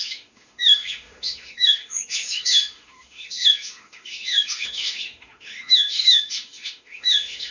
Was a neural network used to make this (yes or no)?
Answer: yes